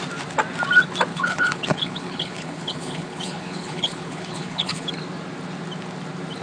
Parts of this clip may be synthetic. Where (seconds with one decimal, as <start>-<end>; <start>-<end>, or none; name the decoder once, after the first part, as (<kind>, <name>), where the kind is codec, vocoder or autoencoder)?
1.1-4.9 (codec, HILCodec)